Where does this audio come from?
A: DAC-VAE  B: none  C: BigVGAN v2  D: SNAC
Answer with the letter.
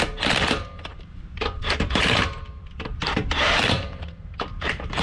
C